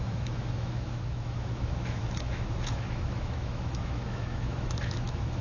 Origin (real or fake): fake